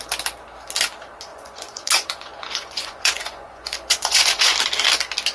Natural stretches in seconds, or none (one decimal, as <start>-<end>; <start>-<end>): 0.0-1.3; 4.5-5.3

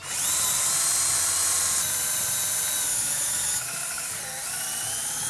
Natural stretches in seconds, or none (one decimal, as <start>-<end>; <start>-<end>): 0.0-2.9; 4.2-5.3

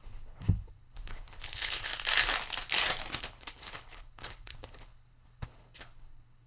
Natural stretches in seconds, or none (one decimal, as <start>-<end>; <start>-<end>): 1.9-3.2

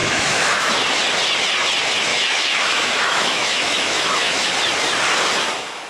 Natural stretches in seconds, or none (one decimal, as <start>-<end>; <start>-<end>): 0.7-2.1; 4.5-5.9

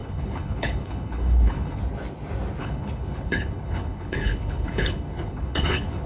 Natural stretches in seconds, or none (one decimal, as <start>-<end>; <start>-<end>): 1.8-2.6

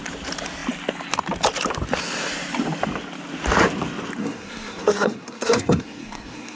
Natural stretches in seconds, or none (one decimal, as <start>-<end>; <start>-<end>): 0.0-4.2